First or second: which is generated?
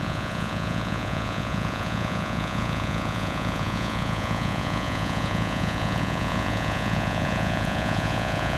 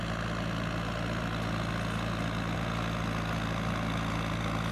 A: first